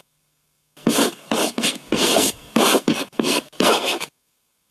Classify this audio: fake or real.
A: fake